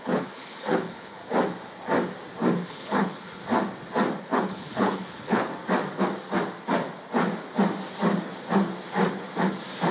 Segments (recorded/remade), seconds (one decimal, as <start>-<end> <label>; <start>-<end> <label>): 0.0-1.2 remade; 1.2-2.7 recorded; 2.7-3.4 remade; 3.4-4.2 recorded; 4.2-5.5 remade; 5.5-9.9 recorded